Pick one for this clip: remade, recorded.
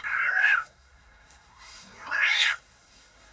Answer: remade